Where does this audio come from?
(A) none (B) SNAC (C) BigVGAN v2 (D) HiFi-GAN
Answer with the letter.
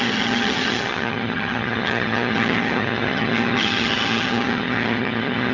D